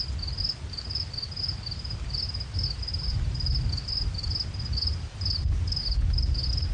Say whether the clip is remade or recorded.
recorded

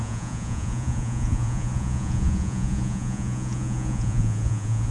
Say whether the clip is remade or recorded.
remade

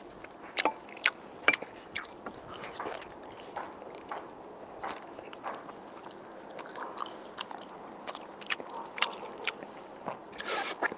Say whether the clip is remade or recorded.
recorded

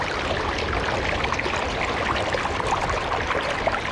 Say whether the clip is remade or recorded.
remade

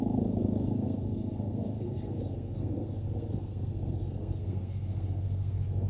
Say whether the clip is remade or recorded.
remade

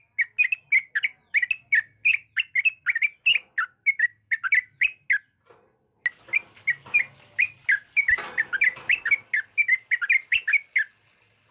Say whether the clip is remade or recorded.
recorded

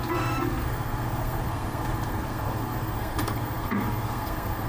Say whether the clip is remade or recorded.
remade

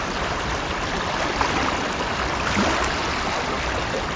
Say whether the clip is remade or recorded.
recorded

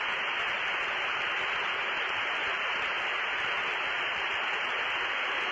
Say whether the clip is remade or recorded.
recorded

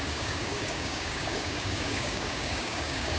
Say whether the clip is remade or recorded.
remade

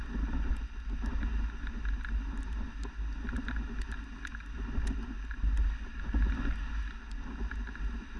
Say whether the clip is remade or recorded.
recorded